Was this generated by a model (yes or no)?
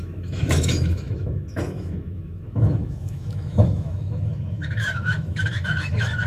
yes